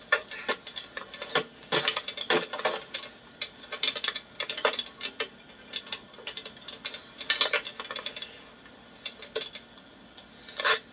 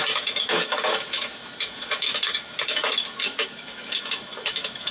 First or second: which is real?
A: first